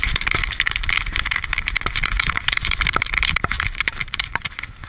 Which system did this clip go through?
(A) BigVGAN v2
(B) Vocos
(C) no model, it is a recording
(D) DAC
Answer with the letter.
A